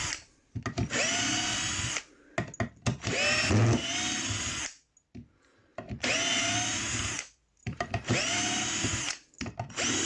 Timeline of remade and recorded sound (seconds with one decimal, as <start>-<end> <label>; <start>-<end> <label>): 0.0-7.6 recorded; 7.6-9.0 remade; 9.0-10.1 recorded